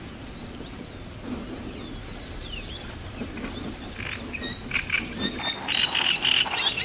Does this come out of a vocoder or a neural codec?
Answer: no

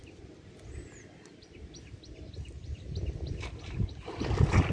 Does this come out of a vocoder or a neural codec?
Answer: no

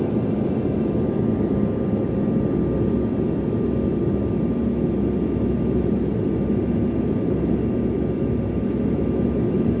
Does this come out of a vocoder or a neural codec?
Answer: no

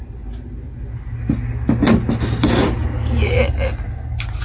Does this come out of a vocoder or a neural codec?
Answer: no